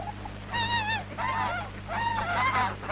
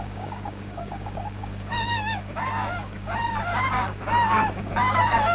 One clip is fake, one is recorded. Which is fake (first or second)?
second